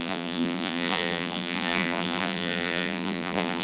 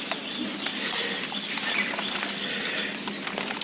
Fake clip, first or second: first